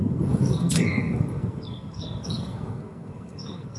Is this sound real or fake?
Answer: fake